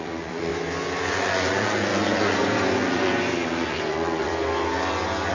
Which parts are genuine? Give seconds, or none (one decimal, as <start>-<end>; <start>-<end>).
0.5-1.1; 4.3-5.3